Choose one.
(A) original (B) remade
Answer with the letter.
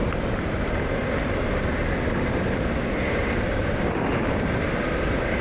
A